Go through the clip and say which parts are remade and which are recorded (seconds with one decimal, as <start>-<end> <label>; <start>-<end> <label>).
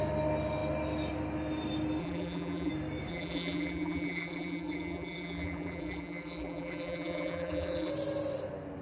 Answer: 0.0-2.0 recorded; 2.0-2.7 remade; 2.7-3.1 recorded; 3.1-7.9 remade; 7.9-8.8 recorded